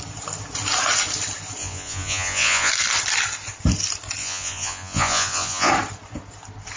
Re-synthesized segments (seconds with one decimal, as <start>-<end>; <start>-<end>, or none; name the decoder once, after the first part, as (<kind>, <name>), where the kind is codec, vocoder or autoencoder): 1.6-2.7 (vocoder, Vocos); 4.2-5.7